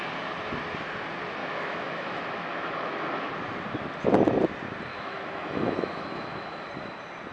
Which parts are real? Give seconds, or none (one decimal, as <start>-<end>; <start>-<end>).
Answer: 0.0-1.4; 3.3-4.9; 6.7-7.3